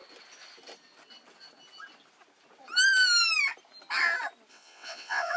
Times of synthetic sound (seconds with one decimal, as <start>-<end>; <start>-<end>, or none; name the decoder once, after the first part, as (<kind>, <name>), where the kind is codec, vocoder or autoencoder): 4.5-5.4 (vocoder, WaveNeXt)